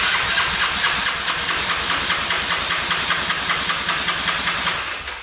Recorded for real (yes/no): yes